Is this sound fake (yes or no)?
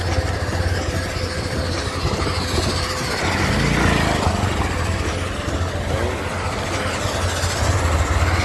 no